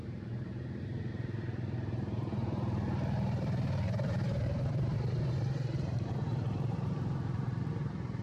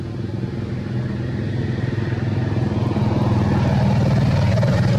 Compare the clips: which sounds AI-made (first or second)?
first